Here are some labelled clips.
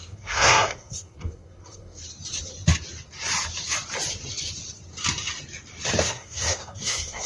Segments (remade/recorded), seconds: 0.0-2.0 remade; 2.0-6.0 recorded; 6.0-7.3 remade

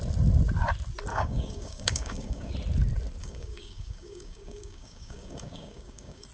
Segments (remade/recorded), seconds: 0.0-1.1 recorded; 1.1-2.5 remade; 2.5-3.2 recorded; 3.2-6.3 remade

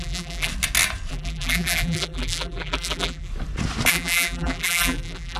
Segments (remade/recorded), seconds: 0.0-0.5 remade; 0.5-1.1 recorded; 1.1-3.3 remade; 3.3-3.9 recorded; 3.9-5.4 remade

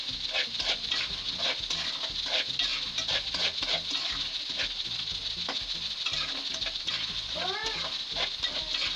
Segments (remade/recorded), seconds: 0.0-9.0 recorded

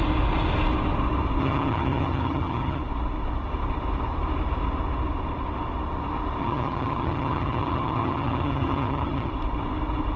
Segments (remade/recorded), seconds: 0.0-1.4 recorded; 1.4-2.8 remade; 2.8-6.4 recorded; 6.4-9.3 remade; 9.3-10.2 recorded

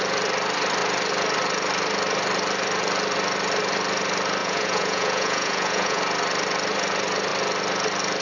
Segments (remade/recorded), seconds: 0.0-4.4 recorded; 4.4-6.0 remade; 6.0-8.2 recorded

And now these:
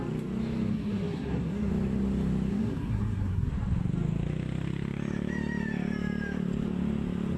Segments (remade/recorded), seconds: 0.0-0.7 recorded; 0.7-1.7 remade; 1.7-2.5 recorded; 2.5-3.5 remade; 3.5-7.4 recorded